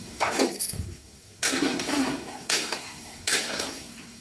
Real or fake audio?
fake